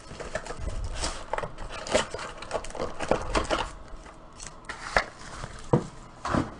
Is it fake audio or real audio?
real